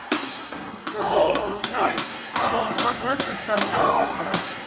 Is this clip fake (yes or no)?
yes